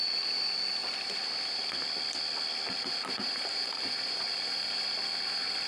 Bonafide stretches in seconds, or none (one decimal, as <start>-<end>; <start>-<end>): 1.2-2.7